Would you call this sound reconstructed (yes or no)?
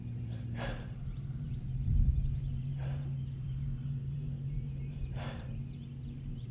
yes